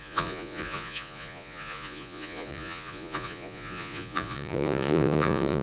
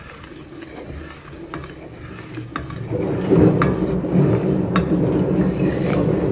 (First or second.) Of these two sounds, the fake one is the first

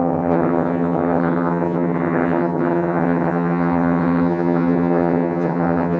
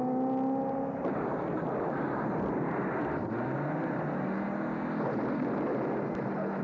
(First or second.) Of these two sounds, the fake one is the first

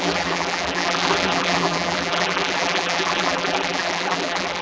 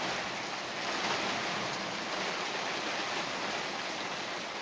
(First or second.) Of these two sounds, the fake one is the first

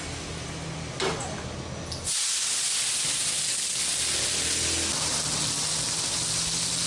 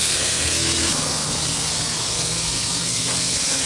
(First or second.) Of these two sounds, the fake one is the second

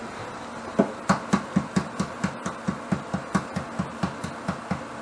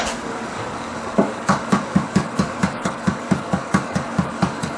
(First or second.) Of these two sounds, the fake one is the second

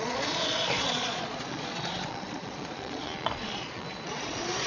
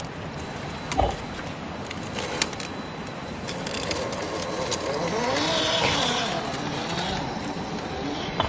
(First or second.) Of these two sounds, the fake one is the first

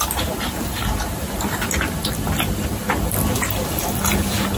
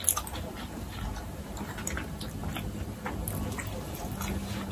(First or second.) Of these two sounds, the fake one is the first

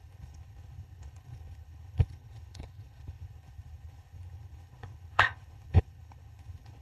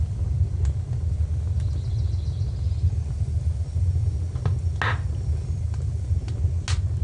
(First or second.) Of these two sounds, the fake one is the first